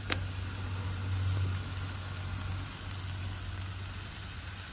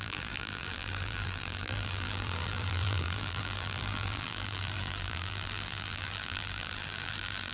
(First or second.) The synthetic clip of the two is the second